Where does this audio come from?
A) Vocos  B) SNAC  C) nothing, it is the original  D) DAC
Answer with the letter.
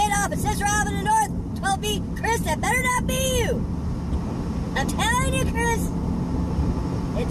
C